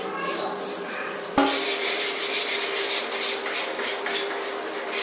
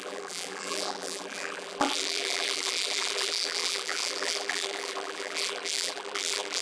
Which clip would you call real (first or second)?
first